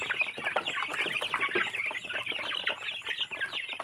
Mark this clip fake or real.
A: real